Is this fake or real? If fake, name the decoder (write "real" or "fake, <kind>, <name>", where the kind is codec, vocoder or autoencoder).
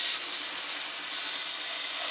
real